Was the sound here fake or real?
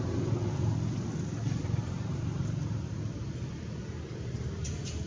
real